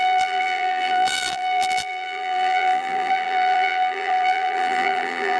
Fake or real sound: fake